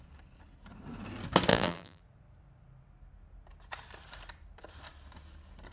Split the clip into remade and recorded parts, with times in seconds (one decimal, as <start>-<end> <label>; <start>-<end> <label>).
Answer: 0.0-1.5 recorded; 1.5-2.0 remade; 2.0-5.7 recorded